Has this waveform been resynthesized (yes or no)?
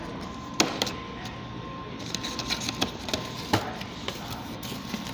no